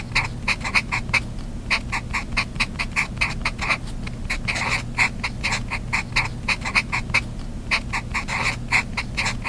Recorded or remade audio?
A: recorded